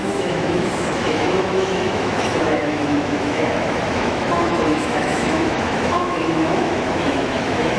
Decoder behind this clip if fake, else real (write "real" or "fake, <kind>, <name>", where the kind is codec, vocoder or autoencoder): fake, autoencoder, DAC-VAE